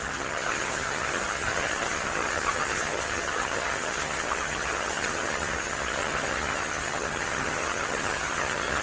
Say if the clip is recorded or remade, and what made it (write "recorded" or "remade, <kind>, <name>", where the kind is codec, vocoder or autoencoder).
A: remade, vocoder, HiFi-GAN